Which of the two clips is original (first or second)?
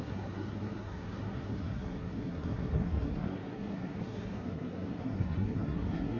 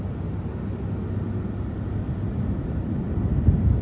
second